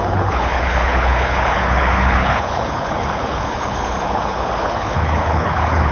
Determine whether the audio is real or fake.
fake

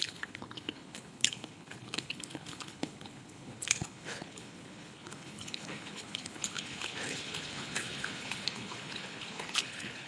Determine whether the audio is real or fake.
fake